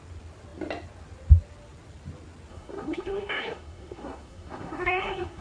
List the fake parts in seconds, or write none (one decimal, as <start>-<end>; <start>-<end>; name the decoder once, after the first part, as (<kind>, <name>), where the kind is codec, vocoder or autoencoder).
2.5-5.4 (codec, SNAC)